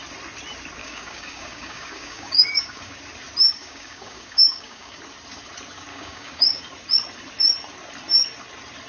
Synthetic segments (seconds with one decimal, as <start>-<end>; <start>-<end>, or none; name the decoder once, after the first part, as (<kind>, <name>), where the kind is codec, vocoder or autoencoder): 0.8-3.0 (codec, DAC); 3.6-5.0; 5.9-6.6